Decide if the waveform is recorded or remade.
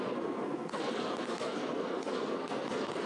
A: remade